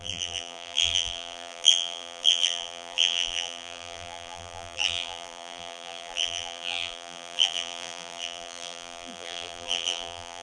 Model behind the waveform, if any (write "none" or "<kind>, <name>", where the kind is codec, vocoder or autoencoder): vocoder, BigVGAN v2